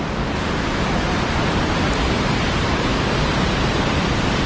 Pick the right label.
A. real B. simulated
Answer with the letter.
A